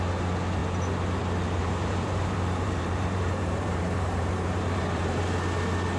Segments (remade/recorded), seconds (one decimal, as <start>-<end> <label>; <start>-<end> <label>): 0.0-1.6 recorded; 1.6-5.2 remade; 5.2-6.0 recorded